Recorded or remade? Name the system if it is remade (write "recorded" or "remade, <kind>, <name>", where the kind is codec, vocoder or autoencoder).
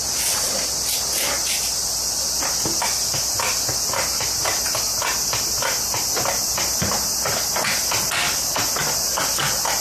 recorded